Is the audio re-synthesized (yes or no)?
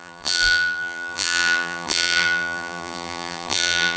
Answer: yes